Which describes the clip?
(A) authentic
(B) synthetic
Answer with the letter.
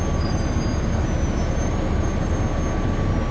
A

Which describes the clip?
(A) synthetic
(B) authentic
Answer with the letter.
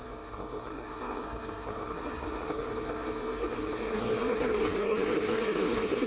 A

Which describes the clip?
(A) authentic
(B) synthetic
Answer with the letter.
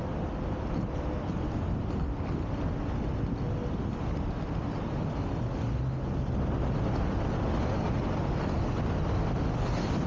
A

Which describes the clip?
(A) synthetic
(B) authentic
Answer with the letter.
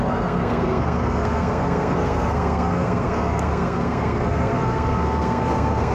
A